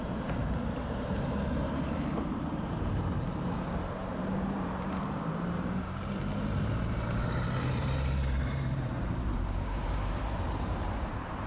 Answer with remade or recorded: remade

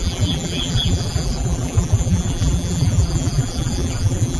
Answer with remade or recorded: remade